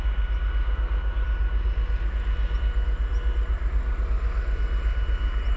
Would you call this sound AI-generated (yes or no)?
no